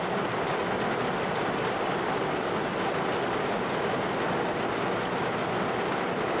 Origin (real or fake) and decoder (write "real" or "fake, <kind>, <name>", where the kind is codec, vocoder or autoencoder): real